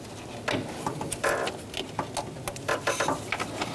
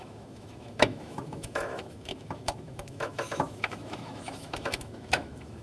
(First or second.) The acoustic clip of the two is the first